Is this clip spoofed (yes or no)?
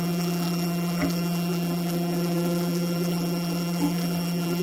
yes